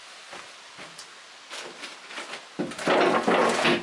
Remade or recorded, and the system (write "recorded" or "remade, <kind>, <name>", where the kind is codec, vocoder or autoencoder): recorded